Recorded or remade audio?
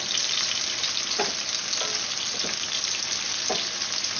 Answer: recorded